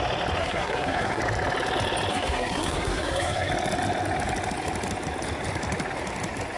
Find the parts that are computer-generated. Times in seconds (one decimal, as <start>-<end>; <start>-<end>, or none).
0.4-1.2; 2.1-3.5